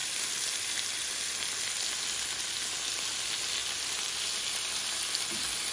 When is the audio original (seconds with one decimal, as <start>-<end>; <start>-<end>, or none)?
0.0-5.7

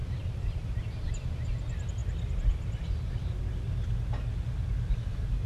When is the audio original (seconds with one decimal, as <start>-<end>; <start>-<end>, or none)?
0.0-5.5

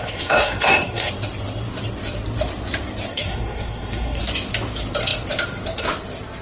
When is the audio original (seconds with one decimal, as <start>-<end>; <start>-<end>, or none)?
1.1-3.1; 4.2-6.4

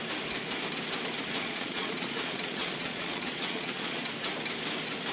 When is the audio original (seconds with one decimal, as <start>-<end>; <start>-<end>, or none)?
0.0-1.3; 4.1-5.1

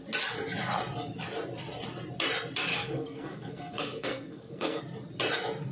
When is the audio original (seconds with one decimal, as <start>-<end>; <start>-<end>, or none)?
0.0-2.7; 4.8-5.7

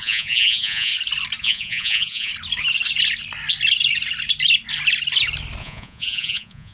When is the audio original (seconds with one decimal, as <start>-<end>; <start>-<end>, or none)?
0.9-1.4; 2.3-5.6

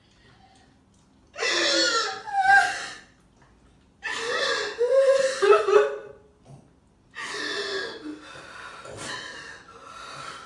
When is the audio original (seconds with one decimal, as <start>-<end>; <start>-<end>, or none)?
0.0-10.5